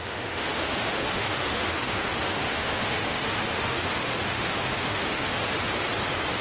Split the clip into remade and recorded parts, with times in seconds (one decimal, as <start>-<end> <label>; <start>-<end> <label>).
0.0-5.4 remade; 5.4-6.4 recorded